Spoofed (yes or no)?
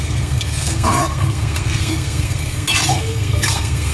yes